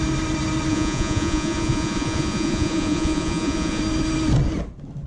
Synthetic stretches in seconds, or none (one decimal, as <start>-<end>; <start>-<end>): 0.7-3.8